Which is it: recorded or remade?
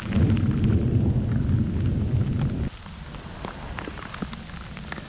recorded